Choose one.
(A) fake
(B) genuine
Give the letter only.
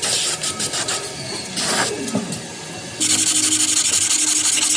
B